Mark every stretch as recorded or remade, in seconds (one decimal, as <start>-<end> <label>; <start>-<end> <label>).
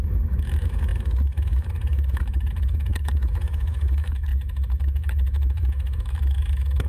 0.0-6.9 remade